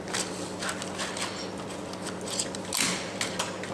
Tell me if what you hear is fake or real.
real